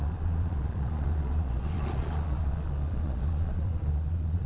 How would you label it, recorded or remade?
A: remade